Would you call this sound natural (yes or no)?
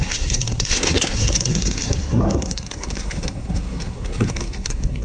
no